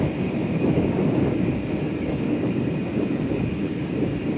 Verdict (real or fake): fake